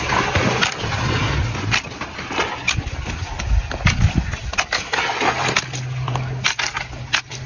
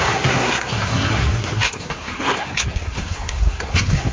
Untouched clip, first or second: first